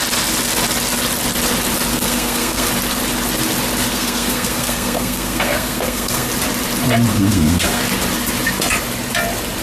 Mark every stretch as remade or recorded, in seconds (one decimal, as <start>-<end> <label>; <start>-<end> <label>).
0.0-1.9 recorded; 1.9-2.7 remade; 2.7-3.9 recorded; 3.9-6.3 remade; 6.3-7.1 recorded; 7.1-7.8 remade; 7.8-9.6 recorded